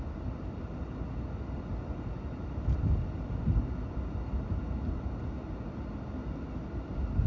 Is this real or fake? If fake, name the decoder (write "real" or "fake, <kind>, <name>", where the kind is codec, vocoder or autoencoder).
real